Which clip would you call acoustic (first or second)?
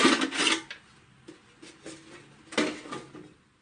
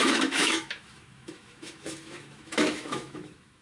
first